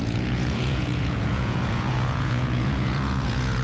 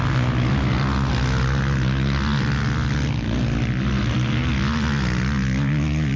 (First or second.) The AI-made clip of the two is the first